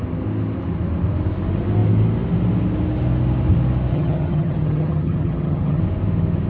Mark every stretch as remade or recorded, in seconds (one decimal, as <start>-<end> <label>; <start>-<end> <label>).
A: 0.0-3.9 recorded; 3.9-5.8 remade; 5.8-6.5 recorded